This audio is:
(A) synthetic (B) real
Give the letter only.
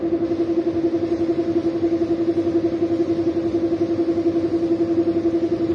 B